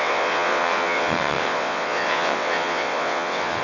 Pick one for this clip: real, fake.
fake